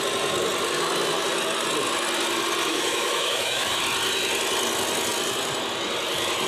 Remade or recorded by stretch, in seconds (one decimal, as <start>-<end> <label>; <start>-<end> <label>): 0.0-2.7 recorded; 2.7-3.8 remade; 3.8-6.5 recorded